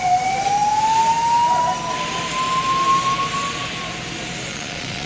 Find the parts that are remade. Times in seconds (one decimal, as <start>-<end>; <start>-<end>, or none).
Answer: 4.5-5.1